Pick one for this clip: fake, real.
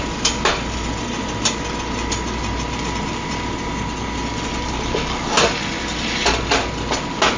real